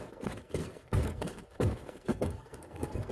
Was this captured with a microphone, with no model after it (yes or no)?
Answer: no